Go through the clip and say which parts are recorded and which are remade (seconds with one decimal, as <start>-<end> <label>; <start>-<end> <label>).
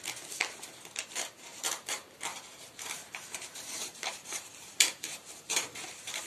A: 0.0-1.0 recorded; 1.0-1.6 remade; 1.6-2.3 recorded; 2.3-6.3 remade